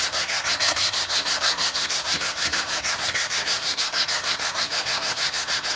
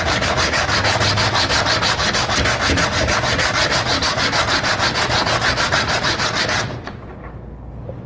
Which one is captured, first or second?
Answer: second